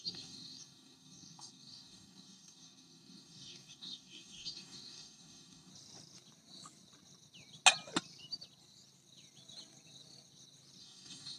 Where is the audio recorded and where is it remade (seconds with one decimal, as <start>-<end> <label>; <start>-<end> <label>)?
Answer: 0.0-5.7 remade; 5.7-10.8 recorded; 10.8-11.4 remade